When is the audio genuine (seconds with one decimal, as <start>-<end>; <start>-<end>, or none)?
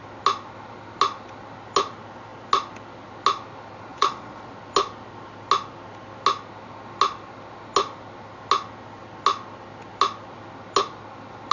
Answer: 0.0-3.9; 4.5-11.5